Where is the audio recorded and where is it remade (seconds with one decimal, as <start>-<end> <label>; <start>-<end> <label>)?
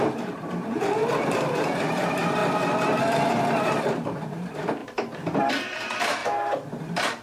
0.0-2.4 remade; 2.4-3.0 recorded; 3.0-6.2 remade; 6.2-6.8 recorded; 6.8-7.2 remade